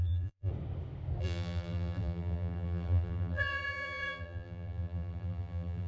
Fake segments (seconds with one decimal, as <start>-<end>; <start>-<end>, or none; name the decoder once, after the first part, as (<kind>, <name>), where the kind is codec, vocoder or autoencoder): 0.0-0.5 (vocoder, BigVGAN v2); 1.2-5.9